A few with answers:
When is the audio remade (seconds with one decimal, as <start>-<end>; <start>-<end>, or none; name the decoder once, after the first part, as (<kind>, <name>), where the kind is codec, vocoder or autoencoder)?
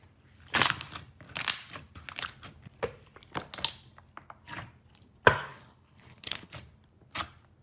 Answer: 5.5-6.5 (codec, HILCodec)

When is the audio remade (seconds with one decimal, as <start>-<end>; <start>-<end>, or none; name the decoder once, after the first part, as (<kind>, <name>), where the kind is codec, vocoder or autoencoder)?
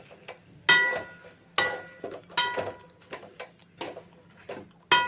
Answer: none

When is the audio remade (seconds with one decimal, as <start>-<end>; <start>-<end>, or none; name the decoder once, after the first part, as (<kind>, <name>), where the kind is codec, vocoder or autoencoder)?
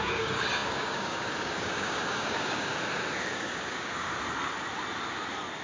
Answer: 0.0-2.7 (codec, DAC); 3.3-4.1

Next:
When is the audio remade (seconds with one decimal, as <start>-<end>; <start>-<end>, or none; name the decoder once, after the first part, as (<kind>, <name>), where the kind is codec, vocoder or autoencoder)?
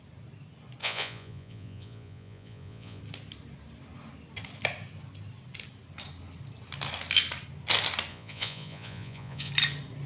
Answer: 0.8-3.0 (vocoder, Vocos); 8.1-9.5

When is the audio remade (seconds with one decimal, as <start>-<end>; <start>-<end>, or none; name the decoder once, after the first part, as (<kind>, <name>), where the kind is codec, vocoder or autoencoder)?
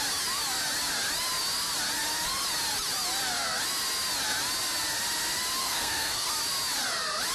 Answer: 5.6-6.3 (codec, SNAC)